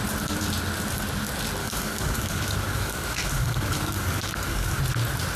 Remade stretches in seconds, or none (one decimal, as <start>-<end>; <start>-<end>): 1.6-4.8

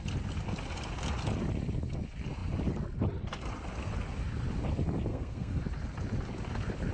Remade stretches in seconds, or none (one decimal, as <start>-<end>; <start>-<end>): 5.1-5.6

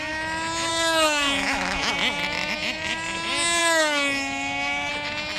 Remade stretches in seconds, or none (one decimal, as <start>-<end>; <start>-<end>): 0.7-1.9; 3.6-4.9